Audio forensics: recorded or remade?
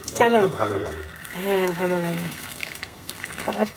remade